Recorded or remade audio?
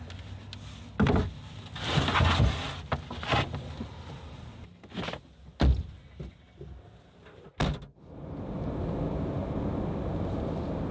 recorded